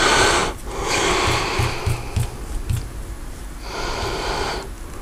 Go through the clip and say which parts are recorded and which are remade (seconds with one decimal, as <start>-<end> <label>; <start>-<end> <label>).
0.0-5.0 recorded